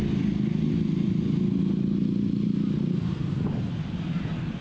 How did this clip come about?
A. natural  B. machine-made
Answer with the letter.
A